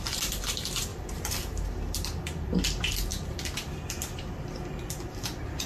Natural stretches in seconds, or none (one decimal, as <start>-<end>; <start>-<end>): 0.9-2.2